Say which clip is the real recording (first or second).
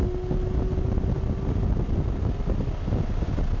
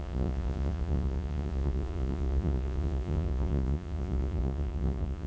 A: first